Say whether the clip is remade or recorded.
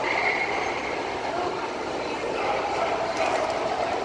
remade